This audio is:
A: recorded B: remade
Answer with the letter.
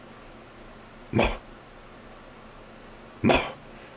A